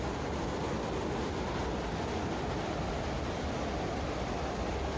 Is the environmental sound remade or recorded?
recorded